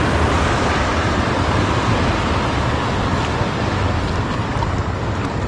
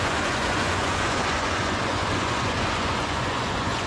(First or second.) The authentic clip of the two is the first